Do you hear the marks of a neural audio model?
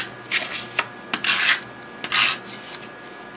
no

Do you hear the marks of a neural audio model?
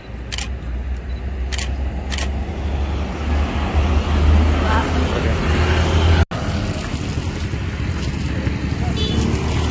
no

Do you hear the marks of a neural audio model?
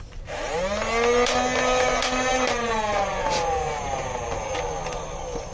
no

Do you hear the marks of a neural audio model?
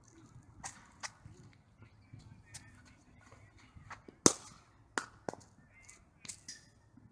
no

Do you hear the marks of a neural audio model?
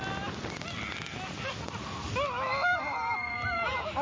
no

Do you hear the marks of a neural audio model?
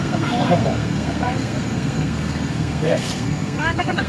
yes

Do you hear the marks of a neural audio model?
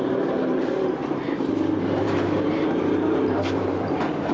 yes